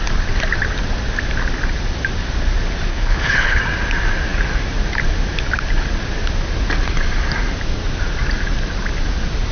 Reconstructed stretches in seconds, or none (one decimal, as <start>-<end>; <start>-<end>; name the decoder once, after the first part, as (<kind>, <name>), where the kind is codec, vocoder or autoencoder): 2.9-3.6 (codec, HILCodec)